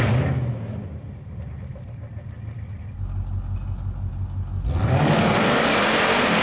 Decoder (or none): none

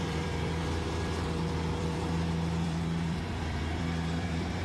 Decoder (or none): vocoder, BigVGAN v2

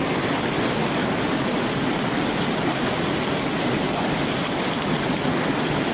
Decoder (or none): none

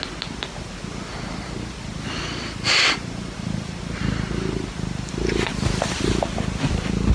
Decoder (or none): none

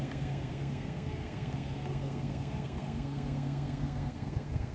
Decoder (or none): codec, SNAC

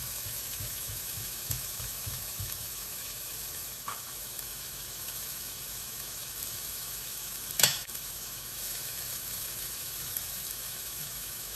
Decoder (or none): autoencoder, DAC-VAE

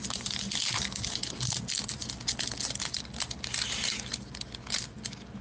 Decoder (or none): none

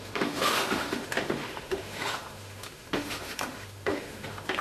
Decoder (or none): autoencoder, DAC-VAE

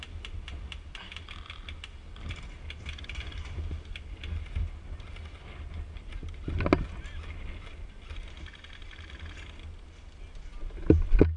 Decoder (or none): none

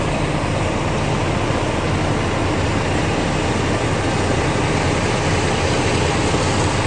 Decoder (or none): none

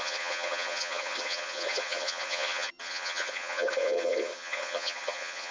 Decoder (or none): vocoder, HiFi-GAN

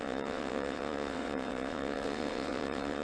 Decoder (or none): vocoder, WaveNeXt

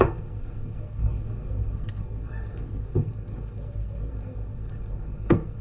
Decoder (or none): codec, SNAC